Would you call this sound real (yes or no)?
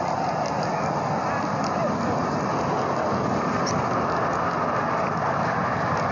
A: yes